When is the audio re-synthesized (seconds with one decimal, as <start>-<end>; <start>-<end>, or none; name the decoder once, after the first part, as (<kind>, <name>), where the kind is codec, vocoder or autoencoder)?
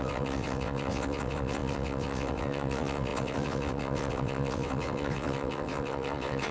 0.0-6.5 (vocoder, WaveNeXt)